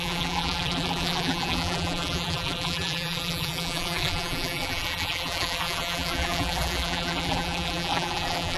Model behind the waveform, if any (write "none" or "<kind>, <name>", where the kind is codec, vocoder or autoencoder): vocoder, BigVGAN v2